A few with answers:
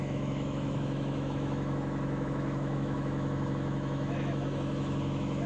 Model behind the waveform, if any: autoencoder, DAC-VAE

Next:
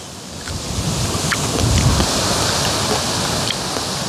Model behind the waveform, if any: none